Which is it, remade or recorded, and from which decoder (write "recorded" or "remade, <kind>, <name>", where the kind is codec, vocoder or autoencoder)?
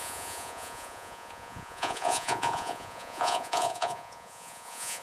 remade, vocoder, Vocos